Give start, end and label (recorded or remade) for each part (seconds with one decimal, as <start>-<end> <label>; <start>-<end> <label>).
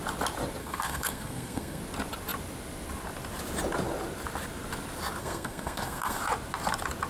0.0-0.6 recorded; 0.6-1.8 remade; 1.8-5.2 recorded; 5.2-6.2 remade; 6.2-7.1 recorded